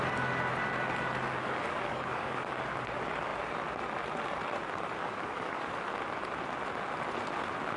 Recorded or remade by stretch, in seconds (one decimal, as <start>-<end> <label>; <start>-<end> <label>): 0.0-1.4 recorded; 1.4-2.5 remade; 2.5-5.0 recorded; 5.0-5.7 remade; 5.7-7.8 recorded